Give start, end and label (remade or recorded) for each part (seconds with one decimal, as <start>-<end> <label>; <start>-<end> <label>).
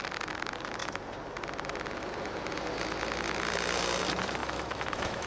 0.0-4.4 recorded; 4.4-5.3 remade